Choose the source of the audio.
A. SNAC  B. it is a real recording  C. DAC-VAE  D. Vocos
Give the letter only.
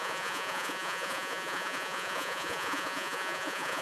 D